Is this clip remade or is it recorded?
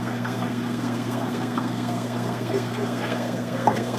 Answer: remade